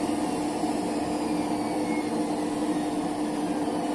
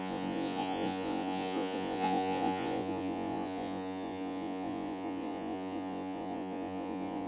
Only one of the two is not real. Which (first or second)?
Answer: second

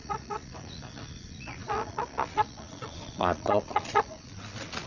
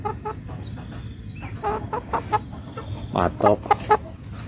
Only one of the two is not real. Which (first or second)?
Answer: first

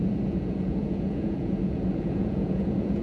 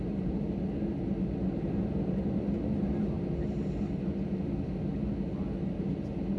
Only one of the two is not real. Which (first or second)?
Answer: first